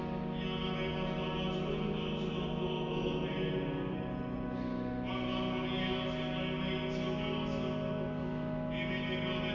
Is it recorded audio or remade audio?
recorded